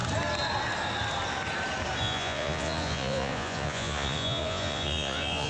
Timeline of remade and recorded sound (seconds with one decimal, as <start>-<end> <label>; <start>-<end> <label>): 0.0-2.0 recorded; 2.0-5.5 remade